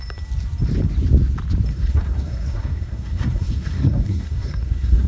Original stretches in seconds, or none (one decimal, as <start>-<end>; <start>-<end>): 0.0-1.7